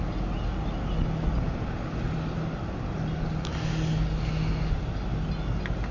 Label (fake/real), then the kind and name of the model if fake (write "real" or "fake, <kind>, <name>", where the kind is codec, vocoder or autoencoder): real